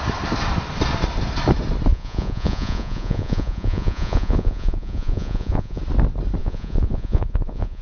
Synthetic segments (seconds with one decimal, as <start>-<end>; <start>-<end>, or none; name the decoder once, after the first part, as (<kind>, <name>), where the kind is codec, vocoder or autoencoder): 1.9-5.8 (vocoder, Vocos); 6.4-7.8